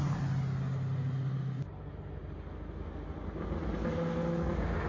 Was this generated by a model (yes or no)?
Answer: no